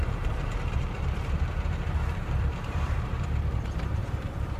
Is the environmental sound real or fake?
fake